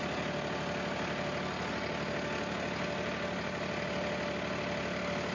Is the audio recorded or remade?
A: recorded